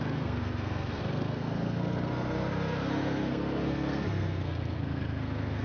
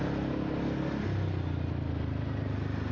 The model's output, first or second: first